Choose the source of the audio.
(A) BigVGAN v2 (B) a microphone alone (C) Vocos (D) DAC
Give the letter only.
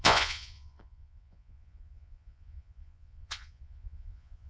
C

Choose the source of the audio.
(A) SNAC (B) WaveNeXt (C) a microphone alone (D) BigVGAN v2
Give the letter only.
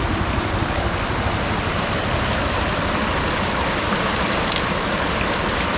C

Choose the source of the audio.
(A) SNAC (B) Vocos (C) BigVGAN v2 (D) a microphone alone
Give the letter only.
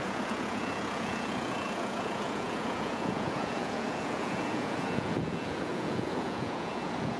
B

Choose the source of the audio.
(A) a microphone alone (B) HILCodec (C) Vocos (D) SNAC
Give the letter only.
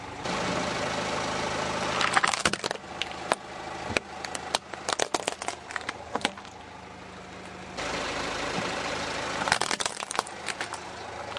A